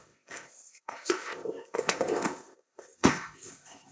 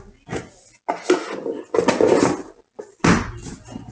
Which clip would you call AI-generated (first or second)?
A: first